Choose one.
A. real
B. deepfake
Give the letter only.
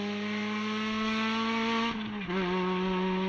A